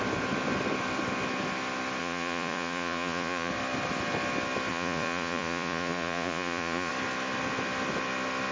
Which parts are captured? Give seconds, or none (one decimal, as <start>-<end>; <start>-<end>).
0.0-2.0; 3.5-4.7; 6.9-8.5